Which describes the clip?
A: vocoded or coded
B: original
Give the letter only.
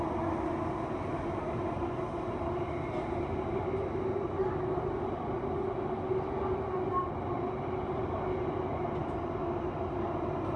B